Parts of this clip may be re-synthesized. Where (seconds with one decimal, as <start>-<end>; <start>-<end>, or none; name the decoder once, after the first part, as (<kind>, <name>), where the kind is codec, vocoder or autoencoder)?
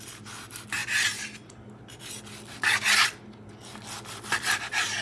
none